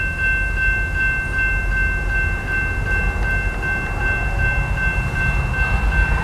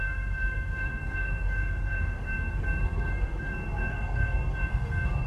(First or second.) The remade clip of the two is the second